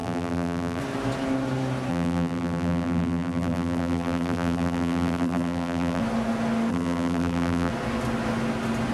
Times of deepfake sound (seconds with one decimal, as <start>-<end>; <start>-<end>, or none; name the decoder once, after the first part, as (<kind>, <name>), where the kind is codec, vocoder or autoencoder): 0.0-0.8 (vocoder, BigVGAN v2); 1.9-6.0; 6.7-7.7